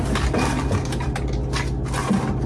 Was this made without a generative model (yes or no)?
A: yes